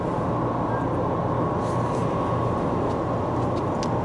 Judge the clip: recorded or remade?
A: recorded